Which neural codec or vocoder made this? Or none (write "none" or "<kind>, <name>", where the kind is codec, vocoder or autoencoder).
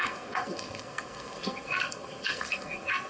codec, SNAC